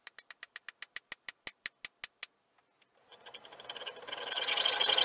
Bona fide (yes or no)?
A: yes